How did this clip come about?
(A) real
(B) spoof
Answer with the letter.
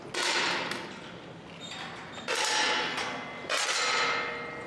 A